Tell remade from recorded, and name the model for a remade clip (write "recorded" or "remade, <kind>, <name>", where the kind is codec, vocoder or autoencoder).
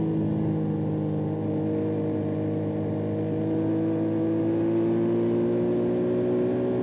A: recorded